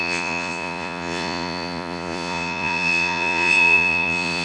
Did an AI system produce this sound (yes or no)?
yes